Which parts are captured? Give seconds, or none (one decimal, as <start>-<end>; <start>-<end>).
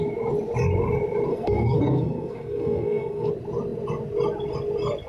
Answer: 0.0-1.3; 3.3-5.1